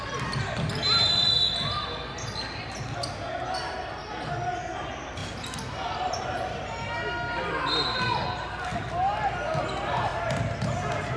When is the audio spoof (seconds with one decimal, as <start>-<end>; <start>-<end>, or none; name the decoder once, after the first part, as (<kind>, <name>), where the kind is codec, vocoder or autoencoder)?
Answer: none